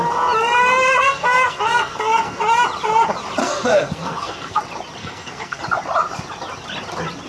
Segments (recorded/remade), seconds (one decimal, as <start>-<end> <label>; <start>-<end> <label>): 0.0-1.0 recorded; 1.0-2.4 remade; 2.4-3.4 recorded; 3.4-4.6 remade; 4.6-5.0 recorded; 5.0-5.6 remade; 5.6-7.3 recorded